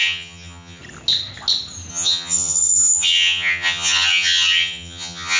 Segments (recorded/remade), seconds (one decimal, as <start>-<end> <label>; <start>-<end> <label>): 0.0-0.8 remade; 0.8-1.9 recorded; 1.9-5.4 remade